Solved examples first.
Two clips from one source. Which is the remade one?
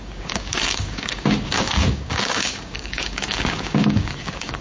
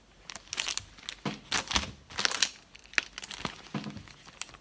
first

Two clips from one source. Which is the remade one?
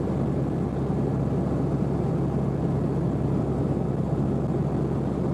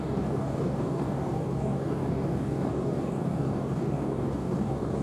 second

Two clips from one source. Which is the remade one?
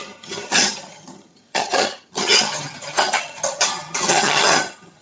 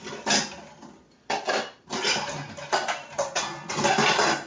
first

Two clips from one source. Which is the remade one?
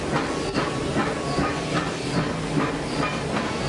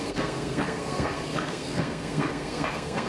second